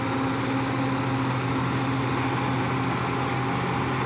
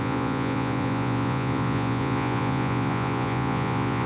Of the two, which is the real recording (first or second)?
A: first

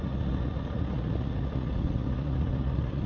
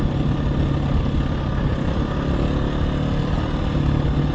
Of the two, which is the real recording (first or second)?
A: second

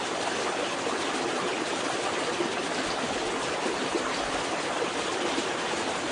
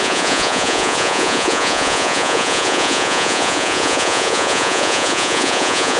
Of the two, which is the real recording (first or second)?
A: first